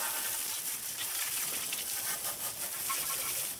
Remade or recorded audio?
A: recorded